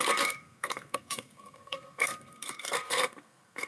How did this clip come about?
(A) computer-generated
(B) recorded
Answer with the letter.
A